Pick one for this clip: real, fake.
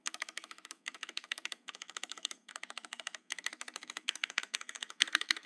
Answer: fake